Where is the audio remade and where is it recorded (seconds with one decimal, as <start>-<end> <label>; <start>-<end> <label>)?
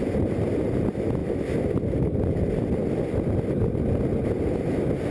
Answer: 0.0-5.1 recorded